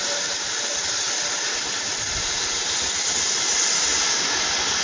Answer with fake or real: real